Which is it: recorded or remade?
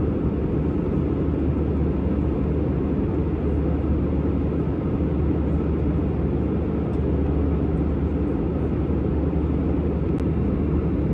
recorded